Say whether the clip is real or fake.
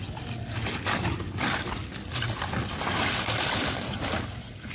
real